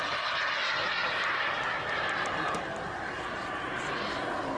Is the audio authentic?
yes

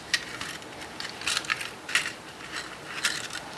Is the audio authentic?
yes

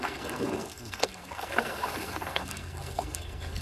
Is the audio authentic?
no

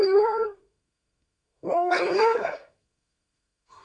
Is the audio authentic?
no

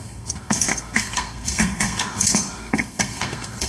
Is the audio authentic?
no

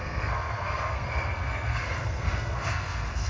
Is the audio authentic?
no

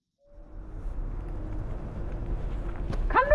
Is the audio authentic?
yes